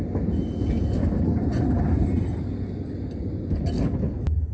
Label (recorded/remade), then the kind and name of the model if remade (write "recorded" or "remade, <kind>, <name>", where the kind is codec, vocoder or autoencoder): recorded